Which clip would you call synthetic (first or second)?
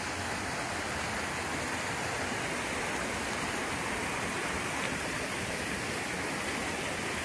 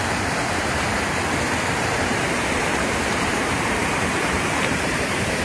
second